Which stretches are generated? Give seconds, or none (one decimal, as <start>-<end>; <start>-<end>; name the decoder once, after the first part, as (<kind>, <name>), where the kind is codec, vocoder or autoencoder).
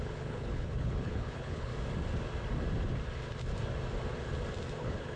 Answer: 0.0-1.7 (codec, HILCodec); 4.8-5.2